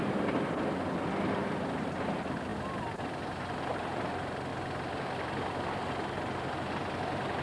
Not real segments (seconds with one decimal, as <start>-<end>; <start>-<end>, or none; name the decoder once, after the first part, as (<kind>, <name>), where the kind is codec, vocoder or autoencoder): none